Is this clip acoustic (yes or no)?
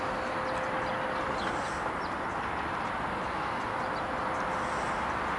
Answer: yes